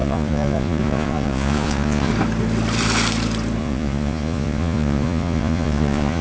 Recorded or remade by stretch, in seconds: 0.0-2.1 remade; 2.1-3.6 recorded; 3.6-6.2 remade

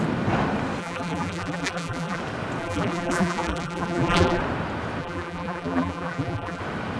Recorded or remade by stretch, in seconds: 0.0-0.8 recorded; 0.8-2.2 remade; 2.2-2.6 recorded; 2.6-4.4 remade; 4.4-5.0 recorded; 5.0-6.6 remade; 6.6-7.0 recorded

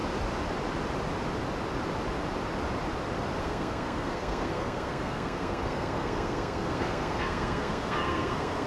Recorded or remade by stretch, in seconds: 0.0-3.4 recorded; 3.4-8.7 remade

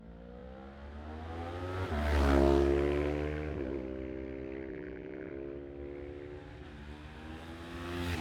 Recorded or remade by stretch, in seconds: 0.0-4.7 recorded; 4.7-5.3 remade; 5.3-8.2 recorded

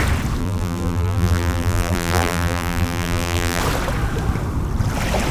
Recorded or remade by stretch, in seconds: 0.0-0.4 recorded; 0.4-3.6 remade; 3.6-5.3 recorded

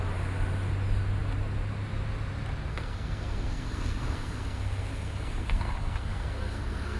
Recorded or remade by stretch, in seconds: 0.0-2.7 recorded; 2.7-7.0 remade